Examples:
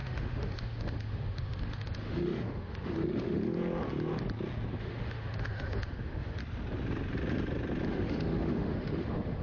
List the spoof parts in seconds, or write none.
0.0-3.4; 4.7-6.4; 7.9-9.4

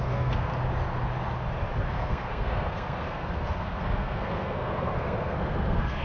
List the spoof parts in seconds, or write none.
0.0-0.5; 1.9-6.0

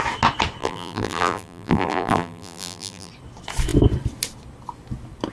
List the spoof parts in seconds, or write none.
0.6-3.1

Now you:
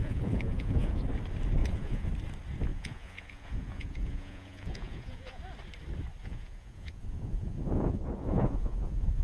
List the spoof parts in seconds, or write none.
0.0-1.0; 1.6-2.1; 2.7-5.4; 6.2-9.2

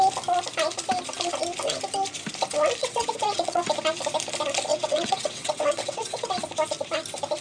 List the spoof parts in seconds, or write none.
2.8-3.6; 4.7-6.3

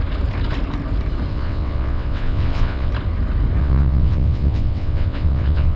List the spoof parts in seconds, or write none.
1.3-2.9; 3.6-5.8